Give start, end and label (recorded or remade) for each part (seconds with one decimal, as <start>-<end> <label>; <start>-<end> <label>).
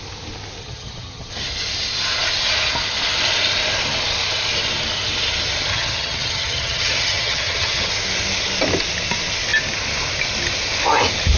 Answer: 0.0-0.6 recorded; 0.6-1.3 remade; 1.3-5.7 recorded; 5.7-7.9 remade; 7.9-11.4 recorded